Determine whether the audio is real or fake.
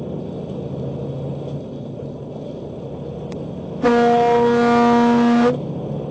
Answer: real